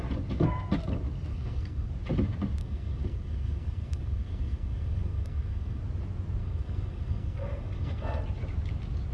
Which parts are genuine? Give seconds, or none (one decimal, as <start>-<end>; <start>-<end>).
0.0-1.3; 1.9-2.6; 5.8-6.4; 8.2-9.1